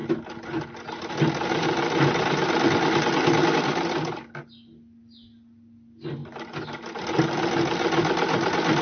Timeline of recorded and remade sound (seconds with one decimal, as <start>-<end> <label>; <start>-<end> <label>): 0.0-8.8 recorded